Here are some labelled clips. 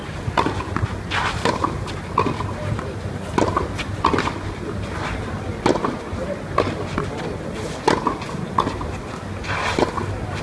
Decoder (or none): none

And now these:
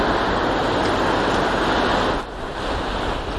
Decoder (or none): none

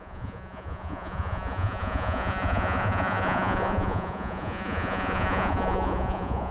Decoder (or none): vocoder, Vocos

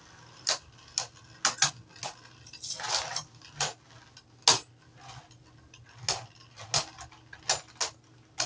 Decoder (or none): none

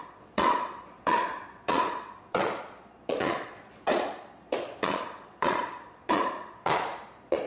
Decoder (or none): vocoder, Vocos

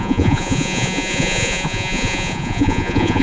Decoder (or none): vocoder, Vocos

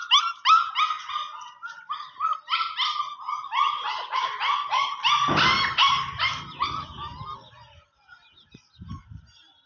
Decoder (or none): none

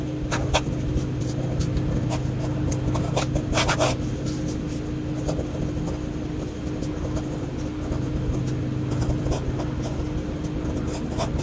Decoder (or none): none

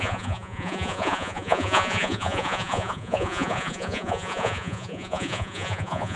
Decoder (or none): vocoder, Vocos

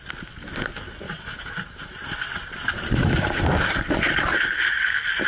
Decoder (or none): none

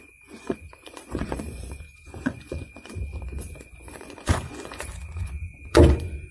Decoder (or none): vocoder, Vocos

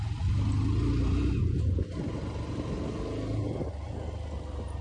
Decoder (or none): none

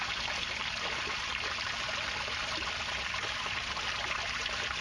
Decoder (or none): none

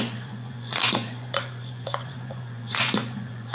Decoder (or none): vocoder, Vocos